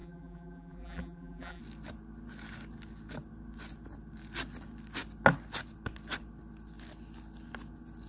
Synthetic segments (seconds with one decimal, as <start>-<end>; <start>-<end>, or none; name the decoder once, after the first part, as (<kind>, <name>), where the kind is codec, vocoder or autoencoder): 0.0-1.6 (vocoder, BigVGAN v2)